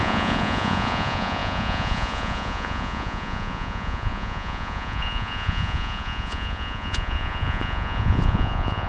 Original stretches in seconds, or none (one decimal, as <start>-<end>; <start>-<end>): none